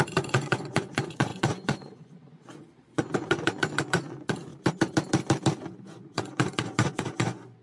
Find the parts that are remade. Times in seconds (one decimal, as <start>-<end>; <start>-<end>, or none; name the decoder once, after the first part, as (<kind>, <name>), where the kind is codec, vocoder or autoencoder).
0.0-4.5 (vocoder, Vocos); 5.7-7.6